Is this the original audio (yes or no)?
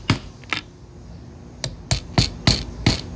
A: yes